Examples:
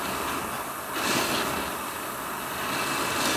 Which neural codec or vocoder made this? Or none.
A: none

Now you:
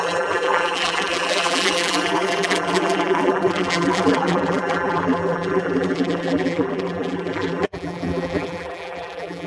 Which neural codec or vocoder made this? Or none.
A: vocoder, BigVGAN v2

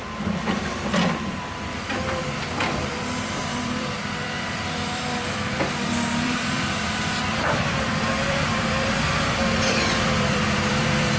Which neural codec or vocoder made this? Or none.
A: vocoder, BigVGAN v2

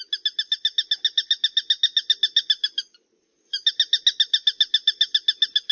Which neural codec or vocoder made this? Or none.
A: none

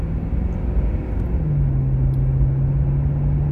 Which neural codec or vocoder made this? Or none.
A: none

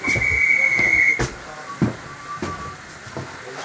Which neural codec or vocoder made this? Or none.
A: none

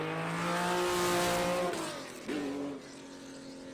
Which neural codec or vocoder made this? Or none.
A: none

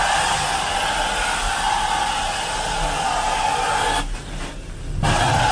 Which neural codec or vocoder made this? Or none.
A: none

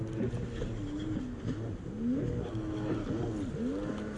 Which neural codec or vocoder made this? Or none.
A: none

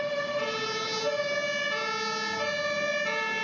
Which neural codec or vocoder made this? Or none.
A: none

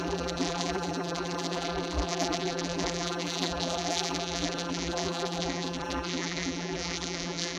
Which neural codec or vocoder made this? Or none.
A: vocoder, BigVGAN v2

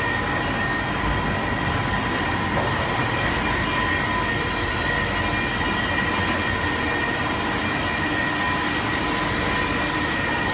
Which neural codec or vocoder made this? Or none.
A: none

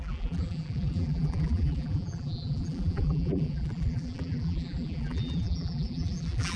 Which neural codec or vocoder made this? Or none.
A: vocoder, BigVGAN v2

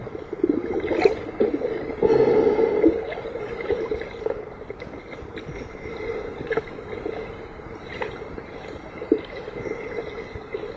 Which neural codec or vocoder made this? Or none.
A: none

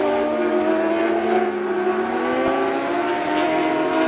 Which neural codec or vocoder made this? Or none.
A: none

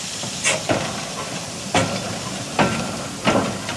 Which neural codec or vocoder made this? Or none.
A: vocoder, BigVGAN v2